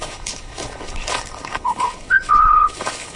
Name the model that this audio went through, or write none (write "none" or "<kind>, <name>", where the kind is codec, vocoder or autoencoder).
codec, HILCodec